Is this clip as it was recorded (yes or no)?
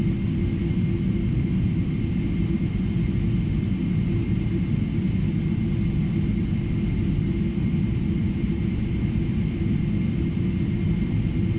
yes